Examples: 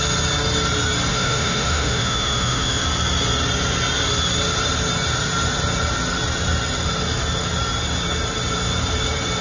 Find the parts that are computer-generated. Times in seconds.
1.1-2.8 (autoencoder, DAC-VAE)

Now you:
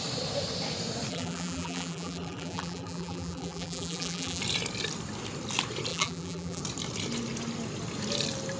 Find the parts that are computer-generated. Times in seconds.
1.1-4.4 (vocoder, BigVGAN v2); 5.9-6.6

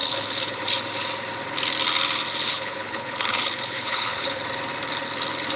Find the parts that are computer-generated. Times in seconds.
0.0-0.6 (codec, HILCodec); 2.5-4.4

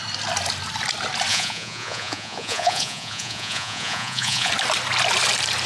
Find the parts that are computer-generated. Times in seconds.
1.3-4.5 (vocoder, Vocos)

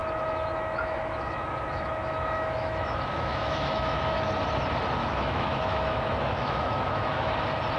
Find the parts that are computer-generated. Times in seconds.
0.0-4.3 (autoencoder, DAC-VAE); 5.0-7.3

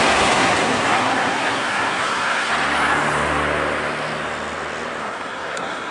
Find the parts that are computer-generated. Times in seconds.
0.0-2.5 (codec, SNAC); 5.0-5.9

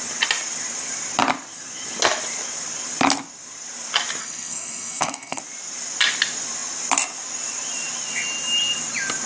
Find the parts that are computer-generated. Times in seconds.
4.2-5.4 (codec, SNAC)

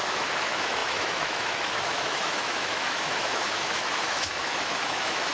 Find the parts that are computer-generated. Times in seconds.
0.0-5.3 (autoencoder, DAC-VAE)